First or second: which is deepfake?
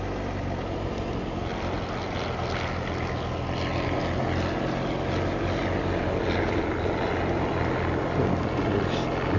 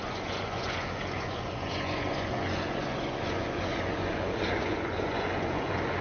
second